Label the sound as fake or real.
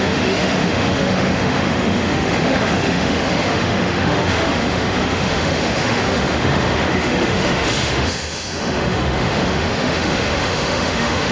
fake